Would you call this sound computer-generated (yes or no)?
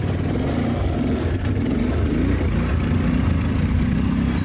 no